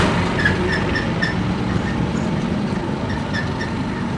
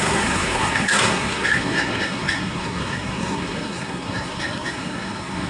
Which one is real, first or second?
first